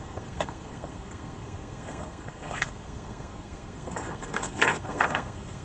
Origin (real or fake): fake